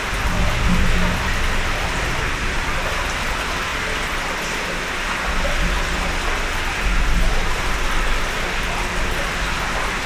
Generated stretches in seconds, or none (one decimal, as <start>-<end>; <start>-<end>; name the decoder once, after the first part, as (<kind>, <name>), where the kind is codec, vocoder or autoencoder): none